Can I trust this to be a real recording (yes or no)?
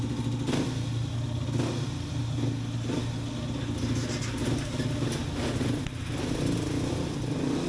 yes